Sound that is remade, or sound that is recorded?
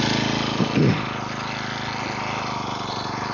recorded